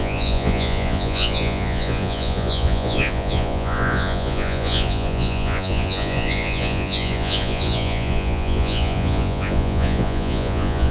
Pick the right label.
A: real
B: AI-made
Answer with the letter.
B